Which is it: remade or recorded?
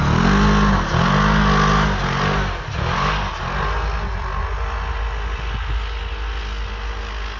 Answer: recorded